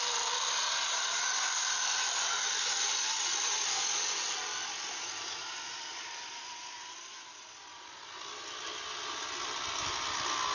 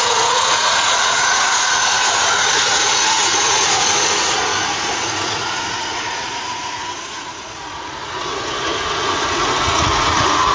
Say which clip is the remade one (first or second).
second